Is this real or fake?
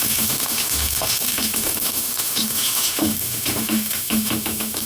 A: fake